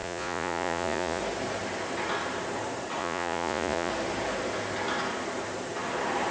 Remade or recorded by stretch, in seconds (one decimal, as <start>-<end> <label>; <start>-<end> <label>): 0.0-1.2 remade; 1.2-3.0 recorded; 3.0-3.9 remade; 3.9-6.3 recorded